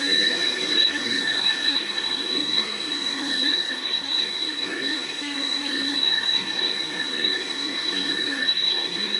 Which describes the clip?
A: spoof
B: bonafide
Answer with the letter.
A